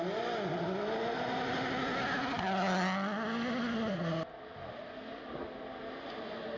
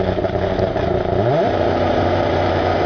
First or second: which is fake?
second